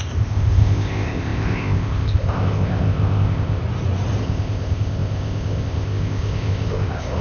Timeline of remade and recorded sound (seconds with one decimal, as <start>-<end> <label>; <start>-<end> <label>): 0.0-3.6 remade; 3.6-4.2 recorded; 4.2-7.2 remade

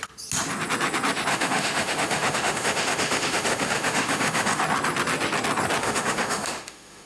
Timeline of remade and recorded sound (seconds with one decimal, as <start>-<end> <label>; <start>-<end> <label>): 0.0-1.3 recorded; 1.3-4.6 remade; 4.6-5.8 recorded; 5.8-7.1 remade

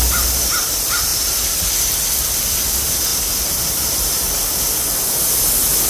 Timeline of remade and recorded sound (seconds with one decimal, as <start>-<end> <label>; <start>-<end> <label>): 0.0-5.9 recorded

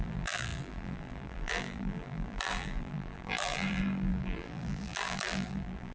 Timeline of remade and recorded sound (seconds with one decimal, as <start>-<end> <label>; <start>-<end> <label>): 0.0-5.9 remade

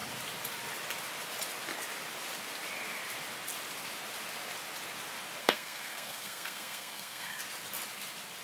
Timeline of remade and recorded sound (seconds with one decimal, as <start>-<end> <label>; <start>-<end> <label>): 0.0-5.4 recorded; 5.4-7.4 remade; 7.4-8.4 recorded

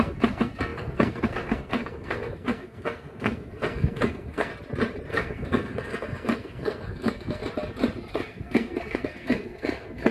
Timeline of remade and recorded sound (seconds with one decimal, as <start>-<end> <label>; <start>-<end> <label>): 0.0-4.5 remade; 4.5-5.1 recorded; 5.1-7.4 remade; 7.4-8.1 recorded; 8.1-10.1 remade

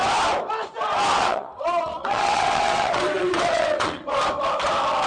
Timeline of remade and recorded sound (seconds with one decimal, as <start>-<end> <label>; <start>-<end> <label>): 0.0-1.1 recorded; 1.1-4.2 remade; 4.2-5.1 recorded

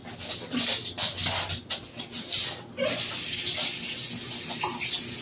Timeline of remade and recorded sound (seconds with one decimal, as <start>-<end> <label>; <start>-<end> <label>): 0.0-5.2 recorded